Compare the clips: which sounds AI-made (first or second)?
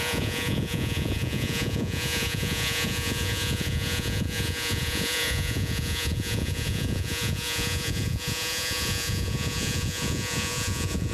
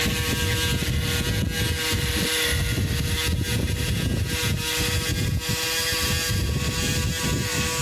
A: first